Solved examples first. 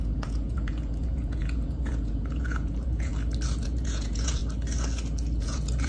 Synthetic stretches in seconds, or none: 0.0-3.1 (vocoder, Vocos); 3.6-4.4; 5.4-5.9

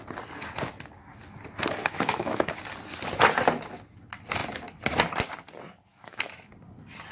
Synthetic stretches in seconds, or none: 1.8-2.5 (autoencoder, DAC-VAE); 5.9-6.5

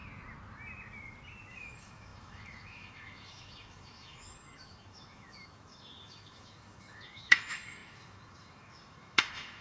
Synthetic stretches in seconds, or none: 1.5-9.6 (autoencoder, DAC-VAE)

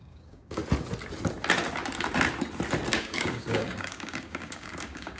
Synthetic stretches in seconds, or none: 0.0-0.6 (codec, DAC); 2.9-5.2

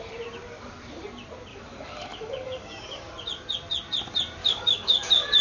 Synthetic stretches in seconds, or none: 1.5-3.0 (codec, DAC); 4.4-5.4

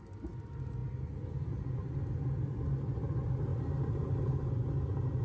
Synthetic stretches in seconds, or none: none